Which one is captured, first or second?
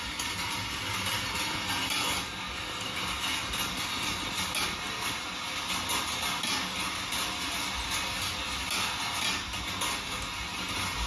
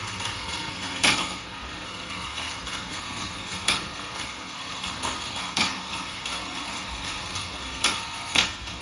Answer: first